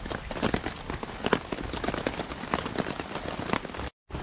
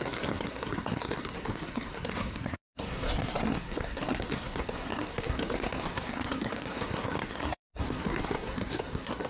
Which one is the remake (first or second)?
second